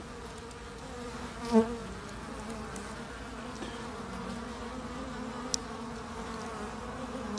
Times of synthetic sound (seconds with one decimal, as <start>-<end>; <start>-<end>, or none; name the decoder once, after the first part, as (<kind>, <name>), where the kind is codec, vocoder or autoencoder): none